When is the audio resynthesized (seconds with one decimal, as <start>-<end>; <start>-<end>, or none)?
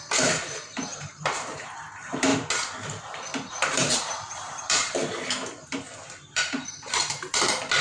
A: 0.0-2.3; 3.7-5.0; 6.3-7.8